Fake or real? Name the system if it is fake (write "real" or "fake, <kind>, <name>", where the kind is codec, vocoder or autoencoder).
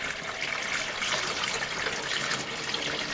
real